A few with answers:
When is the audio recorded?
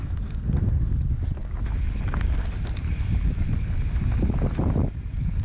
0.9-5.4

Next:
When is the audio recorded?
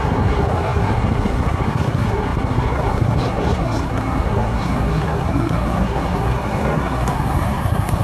none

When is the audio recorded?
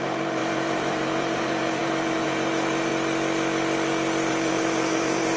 2.9-4.3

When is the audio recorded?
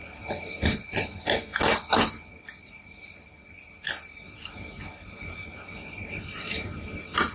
0.0-7.3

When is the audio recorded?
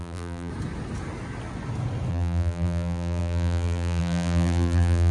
0.5-2.1